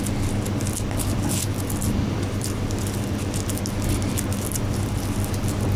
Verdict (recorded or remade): recorded